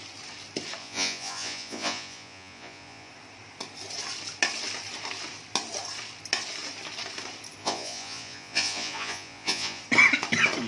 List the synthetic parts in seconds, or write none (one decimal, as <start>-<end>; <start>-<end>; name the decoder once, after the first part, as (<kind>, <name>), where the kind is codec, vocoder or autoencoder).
0.8-3.1 (vocoder, Vocos); 7.6-9.8